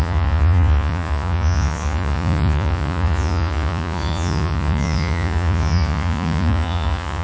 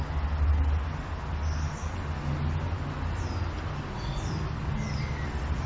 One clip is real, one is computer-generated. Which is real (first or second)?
second